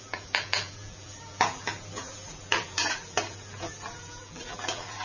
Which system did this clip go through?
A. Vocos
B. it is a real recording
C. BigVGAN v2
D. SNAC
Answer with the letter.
C